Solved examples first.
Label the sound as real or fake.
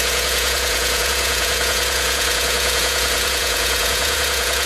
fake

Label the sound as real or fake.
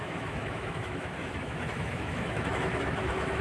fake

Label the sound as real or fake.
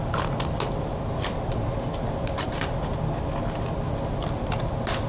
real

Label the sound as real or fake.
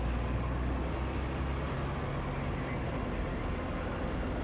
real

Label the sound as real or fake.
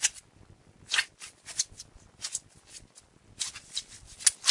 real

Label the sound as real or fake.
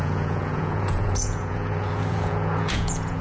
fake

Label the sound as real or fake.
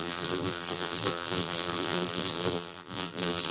fake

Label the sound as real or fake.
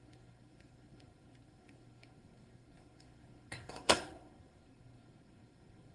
fake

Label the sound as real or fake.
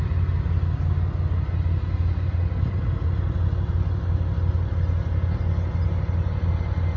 real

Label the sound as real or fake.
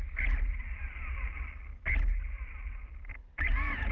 real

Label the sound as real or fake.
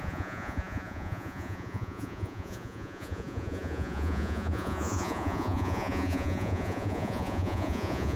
fake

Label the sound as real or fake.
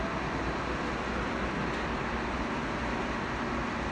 real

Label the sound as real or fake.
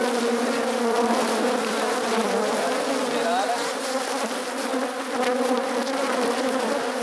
real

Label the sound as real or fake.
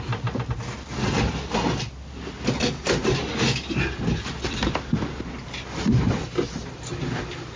real